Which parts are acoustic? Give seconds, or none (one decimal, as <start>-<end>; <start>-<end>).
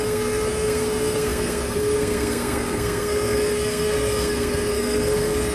none